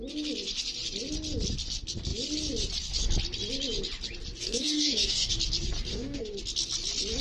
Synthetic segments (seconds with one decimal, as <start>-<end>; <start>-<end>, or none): 4.4-5.4; 5.9-6.4